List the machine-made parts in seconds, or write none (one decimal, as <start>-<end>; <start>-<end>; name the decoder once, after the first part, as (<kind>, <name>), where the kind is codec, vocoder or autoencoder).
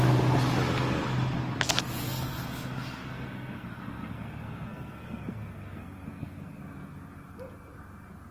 2.0-6.6 (codec, SNAC)